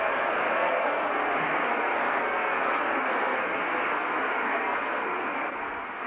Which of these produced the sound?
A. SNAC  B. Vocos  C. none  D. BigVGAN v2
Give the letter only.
A